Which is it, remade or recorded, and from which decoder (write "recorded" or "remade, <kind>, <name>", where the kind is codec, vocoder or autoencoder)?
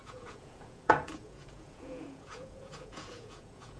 remade, vocoder, Vocos